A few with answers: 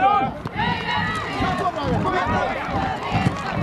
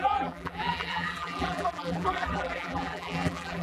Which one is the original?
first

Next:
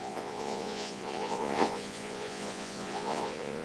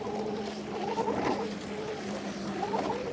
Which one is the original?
second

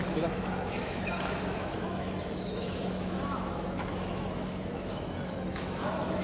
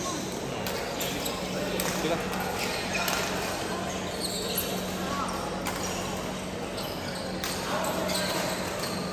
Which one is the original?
second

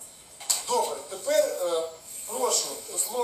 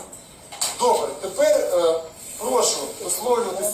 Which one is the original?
second